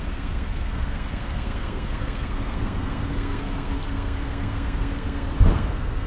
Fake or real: fake